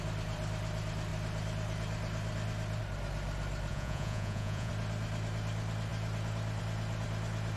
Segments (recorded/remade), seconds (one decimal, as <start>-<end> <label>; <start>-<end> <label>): 0.0-3.7 recorded; 3.7-4.7 remade; 4.7-7.6 recorded